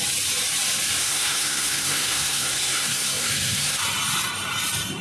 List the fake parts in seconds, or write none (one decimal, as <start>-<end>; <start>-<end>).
1.0-3.8